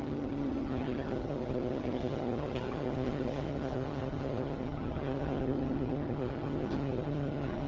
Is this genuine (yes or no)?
no